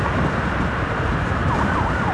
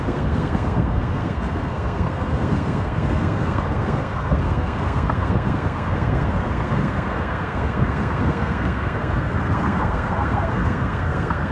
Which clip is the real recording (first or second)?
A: first